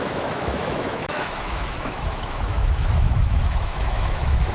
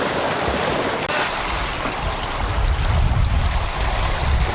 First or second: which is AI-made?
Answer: first